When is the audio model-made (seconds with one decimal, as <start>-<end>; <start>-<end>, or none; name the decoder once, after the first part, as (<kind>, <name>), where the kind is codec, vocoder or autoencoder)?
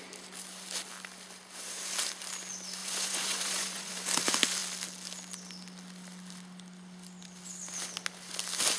2.8-3.9 (vocoder, Vocos)